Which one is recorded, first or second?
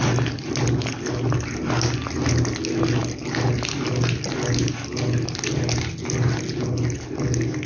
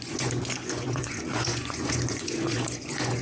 first